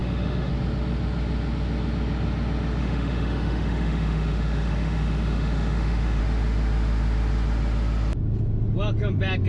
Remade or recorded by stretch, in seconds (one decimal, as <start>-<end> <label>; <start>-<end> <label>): 0.0-0.5 remade; 0.5-2.8 recorded; 2.8-6.2 remade; 6.2-9.5 recorded